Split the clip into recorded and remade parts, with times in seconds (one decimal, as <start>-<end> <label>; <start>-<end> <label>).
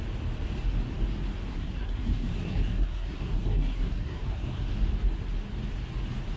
0.0-1.5 recorded; 1.5-4.7 remade; 4.7-6.4 recorded